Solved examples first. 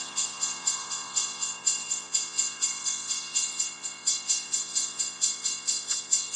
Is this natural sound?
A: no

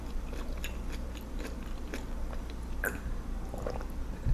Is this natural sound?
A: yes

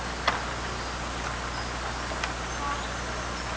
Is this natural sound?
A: yes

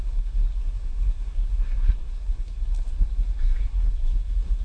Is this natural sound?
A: no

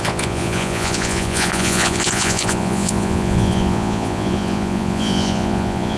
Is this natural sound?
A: no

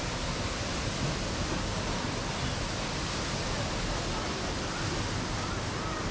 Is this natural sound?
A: yes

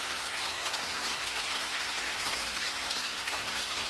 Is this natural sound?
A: no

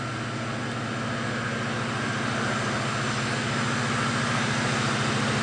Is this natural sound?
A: yes